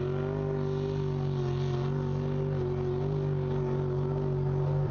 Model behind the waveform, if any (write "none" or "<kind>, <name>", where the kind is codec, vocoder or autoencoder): none